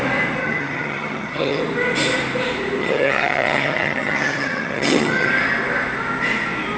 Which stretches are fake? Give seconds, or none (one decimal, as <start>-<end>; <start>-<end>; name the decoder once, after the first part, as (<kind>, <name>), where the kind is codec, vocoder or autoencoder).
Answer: 0.4-1.6 (vocoder, HiFi-GAN); 2.8-5.3